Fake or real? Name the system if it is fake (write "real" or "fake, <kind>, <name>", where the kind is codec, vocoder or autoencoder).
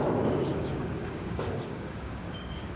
fake, codec, DAC